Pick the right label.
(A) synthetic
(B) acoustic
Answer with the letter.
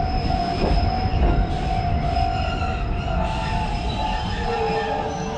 B